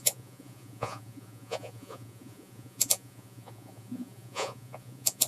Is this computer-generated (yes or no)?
yes